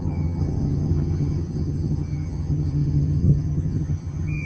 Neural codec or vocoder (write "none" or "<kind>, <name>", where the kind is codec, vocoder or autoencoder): vocoder, HiFi-GAN